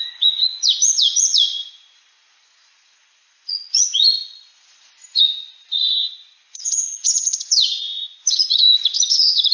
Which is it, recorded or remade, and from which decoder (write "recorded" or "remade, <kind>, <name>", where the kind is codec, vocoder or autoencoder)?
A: remade, vocoder, Vocos